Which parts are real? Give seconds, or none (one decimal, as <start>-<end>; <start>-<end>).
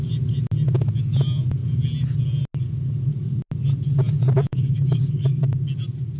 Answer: 0.0-4.5; 5.6-6.2